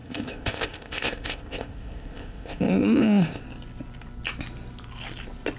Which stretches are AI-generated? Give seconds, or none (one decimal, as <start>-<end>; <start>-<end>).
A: 0.0-3.4